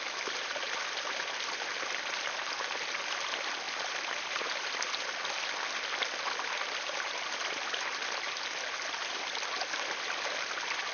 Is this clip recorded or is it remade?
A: recorded